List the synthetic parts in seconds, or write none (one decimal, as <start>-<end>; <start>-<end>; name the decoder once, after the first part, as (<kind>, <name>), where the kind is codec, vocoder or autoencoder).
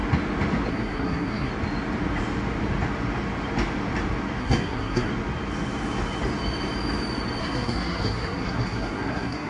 0.7-1.5 (codec, SNAC); 4.4-5.1; 7.4-9.5